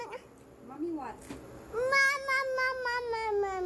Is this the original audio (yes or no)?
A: yes